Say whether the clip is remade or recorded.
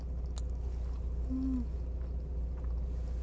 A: recorded